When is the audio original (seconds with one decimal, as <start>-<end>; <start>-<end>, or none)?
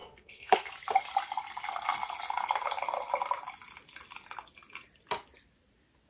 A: 0.7-6.1